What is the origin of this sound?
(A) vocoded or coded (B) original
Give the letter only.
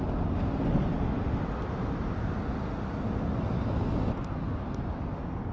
B